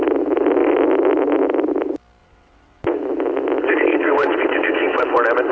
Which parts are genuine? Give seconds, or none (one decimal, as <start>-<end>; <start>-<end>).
0.0-2.2; 3.0-3.9; 5.0-5.5